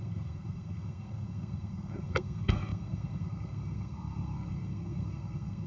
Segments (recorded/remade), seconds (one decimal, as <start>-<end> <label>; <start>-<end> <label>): 0.0-5.7 remade